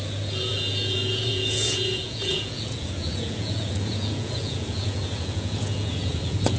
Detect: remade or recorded remade